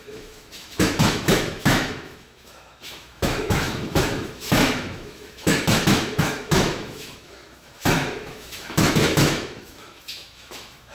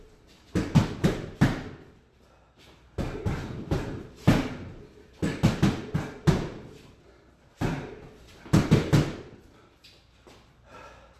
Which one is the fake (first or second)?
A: first